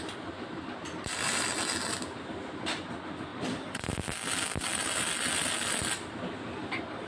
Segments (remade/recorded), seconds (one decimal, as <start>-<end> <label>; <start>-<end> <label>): 0.0-7.1 recorded

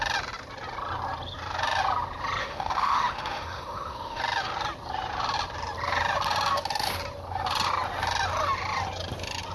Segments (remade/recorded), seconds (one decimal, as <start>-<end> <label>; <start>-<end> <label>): 0.0-2.4 recorded; 2.4-4.2 remade; 4.2-9.5 recorded

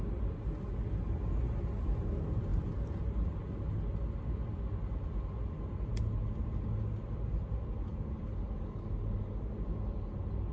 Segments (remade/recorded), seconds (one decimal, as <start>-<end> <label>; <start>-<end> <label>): 0.0-10.5 recorded